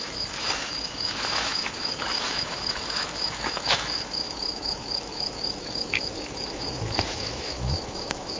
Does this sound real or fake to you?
fake